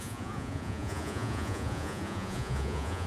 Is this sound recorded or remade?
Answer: remade